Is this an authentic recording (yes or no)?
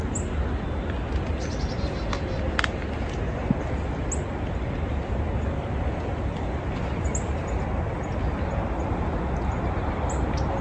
yes